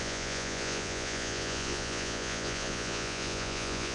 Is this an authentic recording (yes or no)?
no